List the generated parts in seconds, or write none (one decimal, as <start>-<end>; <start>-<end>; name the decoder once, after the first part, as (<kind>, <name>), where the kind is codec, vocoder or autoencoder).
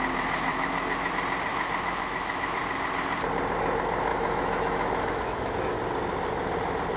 0.5-1.1 (autoencoder, DAC-VAE); 1.5-2.6; 4.1-5.6